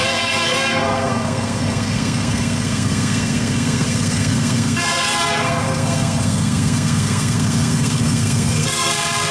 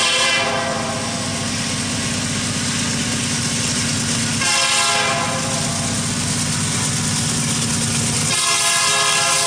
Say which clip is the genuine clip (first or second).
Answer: second